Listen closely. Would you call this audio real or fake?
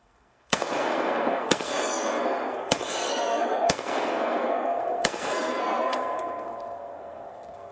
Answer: fake